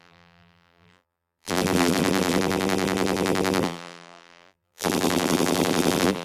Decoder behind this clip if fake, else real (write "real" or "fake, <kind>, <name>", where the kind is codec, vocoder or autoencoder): fake, vocoder, BigVGAN v2